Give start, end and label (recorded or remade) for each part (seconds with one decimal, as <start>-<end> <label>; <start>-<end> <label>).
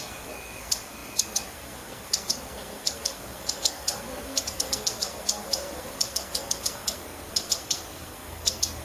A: 0.0-8.8 remade